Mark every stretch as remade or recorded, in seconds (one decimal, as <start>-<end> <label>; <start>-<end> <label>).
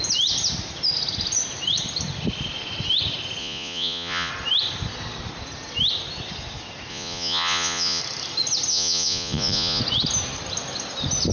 0.0-3.4 recorded; 3.4-4.3 remade; 4.3-6.9 recorded; 6.9-8.0 remade; 8.0-8.7 recorded; 8.7-9.8 remade; 9.8-11.3 recorded